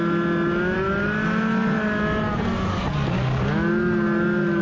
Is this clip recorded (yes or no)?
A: yes